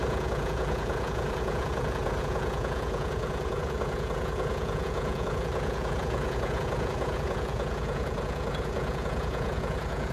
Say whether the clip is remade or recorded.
remade